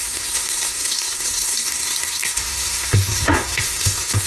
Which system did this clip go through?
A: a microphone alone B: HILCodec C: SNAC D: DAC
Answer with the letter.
C